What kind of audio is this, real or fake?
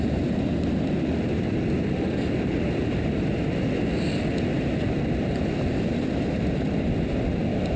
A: fake